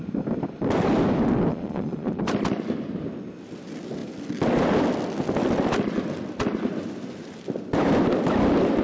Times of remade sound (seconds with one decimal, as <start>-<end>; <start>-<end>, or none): 1.5-2.2

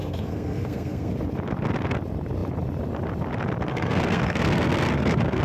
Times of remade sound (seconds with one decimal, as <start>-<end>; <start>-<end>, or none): 0.0-1.1; 3.7-5.4

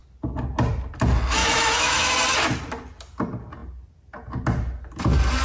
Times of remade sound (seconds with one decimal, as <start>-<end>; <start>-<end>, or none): 1.4-2.1